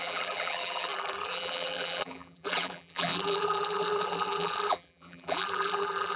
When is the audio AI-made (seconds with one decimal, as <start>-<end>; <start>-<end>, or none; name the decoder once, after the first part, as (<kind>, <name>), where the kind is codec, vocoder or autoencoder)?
0.0-6.2 (vocoder, BigVGAN v2)